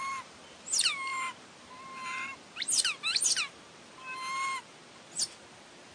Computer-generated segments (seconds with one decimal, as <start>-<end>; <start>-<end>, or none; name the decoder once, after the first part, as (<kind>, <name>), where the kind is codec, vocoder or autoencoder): none